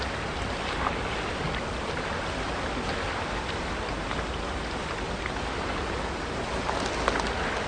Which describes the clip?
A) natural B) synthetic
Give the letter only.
A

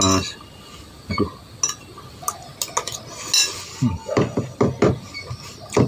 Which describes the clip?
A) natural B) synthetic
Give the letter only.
A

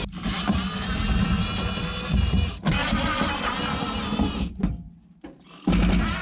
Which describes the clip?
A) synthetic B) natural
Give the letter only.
B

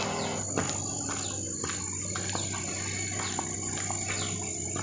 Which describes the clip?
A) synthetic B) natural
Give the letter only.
B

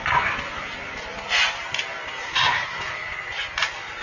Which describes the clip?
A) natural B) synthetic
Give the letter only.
B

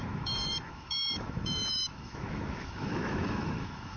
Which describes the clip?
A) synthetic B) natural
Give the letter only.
A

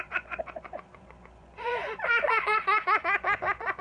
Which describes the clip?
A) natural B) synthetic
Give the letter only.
B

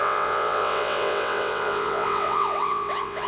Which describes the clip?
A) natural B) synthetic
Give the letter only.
B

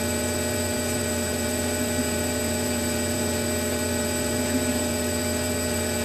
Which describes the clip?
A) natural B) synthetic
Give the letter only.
B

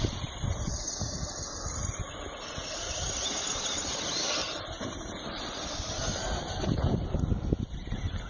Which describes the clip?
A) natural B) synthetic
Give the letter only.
A